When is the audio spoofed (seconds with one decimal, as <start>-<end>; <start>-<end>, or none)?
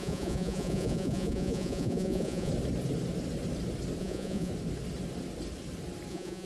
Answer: 0.0-2.5; 4.0-4.5; 6.1-6.5